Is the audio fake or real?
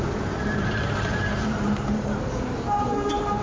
fake